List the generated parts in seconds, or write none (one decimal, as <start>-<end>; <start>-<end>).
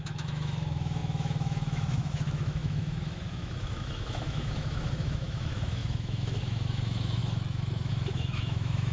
0.0-8.9